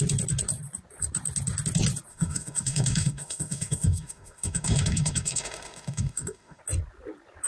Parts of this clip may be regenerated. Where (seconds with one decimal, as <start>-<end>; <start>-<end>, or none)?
2.1-6.6